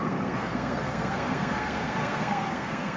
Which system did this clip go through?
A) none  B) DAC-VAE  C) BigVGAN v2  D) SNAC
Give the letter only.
D